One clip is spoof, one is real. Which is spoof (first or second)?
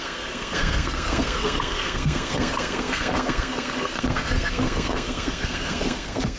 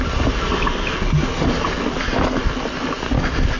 first